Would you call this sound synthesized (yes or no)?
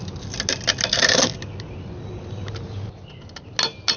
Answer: no